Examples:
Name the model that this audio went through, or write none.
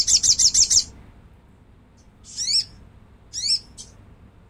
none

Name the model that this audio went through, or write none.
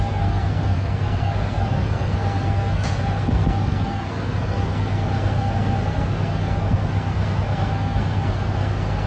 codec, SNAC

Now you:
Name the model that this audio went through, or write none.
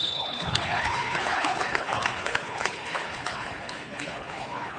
codec, HILCodec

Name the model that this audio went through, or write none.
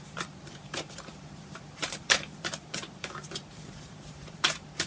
vocoder, BigVGAN v2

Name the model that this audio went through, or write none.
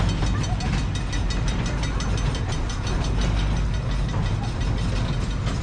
none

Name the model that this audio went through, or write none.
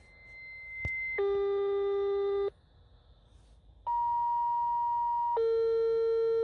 none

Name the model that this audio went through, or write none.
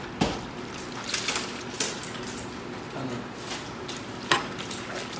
none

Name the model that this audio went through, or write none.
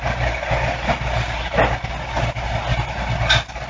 none